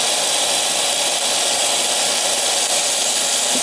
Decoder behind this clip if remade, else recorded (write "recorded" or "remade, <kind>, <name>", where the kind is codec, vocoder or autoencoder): recorded